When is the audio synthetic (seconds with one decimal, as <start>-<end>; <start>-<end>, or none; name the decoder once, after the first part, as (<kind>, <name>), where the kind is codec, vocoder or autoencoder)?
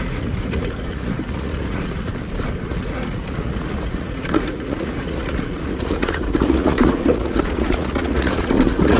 0.0-2.1 (vocoder, Vocos); 2.6-9.0